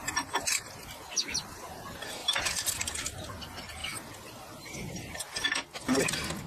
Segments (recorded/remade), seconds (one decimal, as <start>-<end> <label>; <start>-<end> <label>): 0.0-0.7 remade; 0.7-2.2 recorded; 2.2-3.3 remade; 3.3-3.8 recorded; 3.8-6.0 remade; 6.0-6.5 recorded